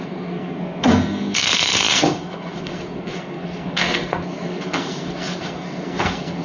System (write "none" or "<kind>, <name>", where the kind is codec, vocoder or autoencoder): codec, SNAC